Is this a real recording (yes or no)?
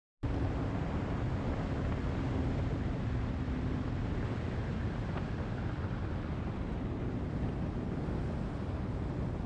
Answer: yes